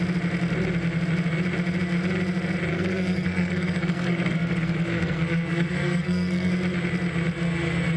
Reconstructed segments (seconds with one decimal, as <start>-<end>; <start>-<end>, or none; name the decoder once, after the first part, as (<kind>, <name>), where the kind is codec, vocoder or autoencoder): 2.7-6.5 (codec, SNAC)

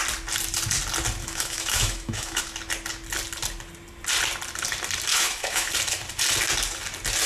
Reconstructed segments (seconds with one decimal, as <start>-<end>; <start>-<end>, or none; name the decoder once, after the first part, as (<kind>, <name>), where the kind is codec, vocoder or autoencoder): 1.2-2.4 (autoencoder, DAC-VAE); 5.1-5.7